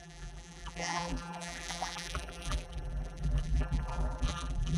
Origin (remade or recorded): remade